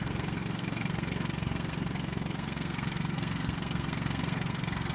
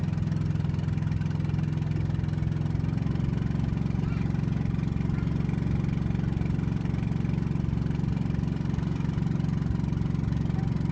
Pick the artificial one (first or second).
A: first